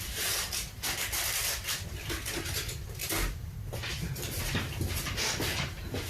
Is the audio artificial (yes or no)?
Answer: no